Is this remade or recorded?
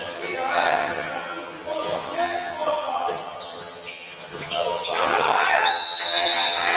remade